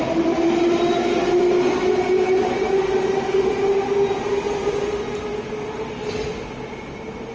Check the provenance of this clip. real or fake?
real